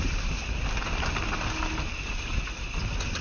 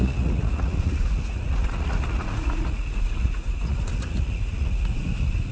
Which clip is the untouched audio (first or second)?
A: first